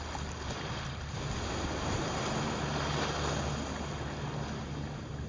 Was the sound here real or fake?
real